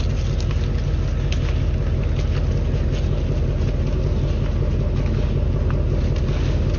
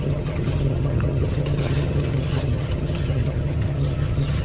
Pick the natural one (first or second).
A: first